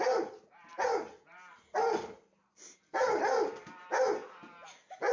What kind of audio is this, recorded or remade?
recorded